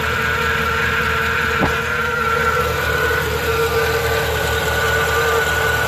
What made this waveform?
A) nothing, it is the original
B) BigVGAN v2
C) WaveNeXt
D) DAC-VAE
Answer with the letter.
A